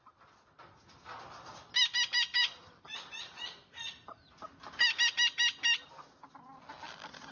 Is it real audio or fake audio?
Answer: real